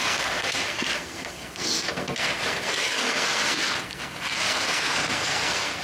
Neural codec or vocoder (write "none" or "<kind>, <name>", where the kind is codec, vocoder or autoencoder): codec, SNAC